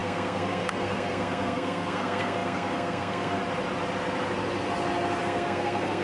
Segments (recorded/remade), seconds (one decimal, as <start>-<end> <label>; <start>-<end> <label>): 0.0-3.4 remade; 3.4-5.2 recorded; 5.2-6.0 remade